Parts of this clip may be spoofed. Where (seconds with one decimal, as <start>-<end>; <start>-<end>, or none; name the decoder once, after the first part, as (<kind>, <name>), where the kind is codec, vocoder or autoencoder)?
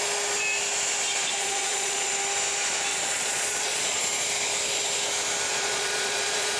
1.4-2.1 (vocoder, Vocos); 2.9-4.0; 5.5-6.6